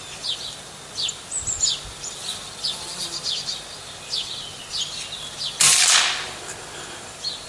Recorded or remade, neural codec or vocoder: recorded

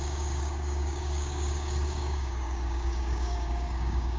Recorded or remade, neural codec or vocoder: remade, codec, DAC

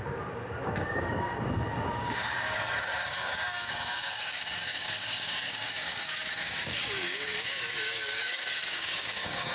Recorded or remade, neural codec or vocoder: remade, codec, DAC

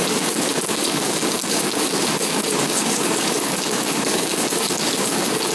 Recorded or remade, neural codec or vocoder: remade, codec, DAC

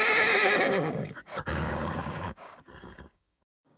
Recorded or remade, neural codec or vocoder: remade, codec, DAC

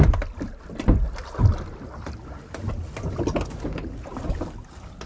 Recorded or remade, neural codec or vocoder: recorded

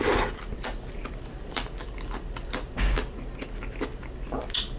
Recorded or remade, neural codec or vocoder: recorded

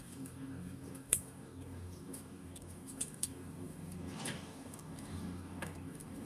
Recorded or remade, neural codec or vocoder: remade, codec, DAC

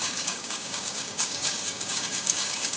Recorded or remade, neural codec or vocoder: remade, codec, DAC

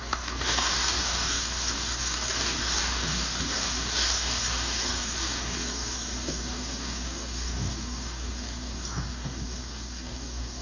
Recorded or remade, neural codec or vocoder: remade, codec, DAC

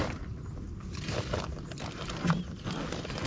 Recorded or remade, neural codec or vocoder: recorded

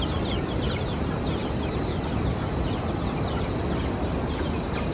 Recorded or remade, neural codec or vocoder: recorded